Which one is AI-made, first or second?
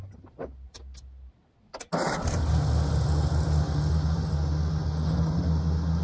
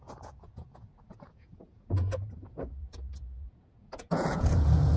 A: second